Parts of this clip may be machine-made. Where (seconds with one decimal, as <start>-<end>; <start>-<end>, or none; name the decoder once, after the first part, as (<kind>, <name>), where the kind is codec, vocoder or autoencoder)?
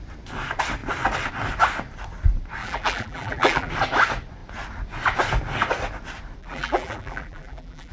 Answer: 2.6-3.7 (vocoder, BigVGAN v2); 6.4-7.9